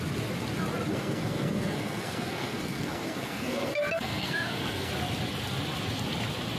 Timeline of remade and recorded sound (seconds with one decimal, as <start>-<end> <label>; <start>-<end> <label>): 0.0-0.9 recorded; 0.9-4.9 remade; 4.9-6.6 recorded